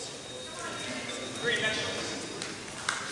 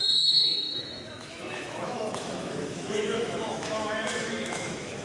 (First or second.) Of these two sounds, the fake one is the second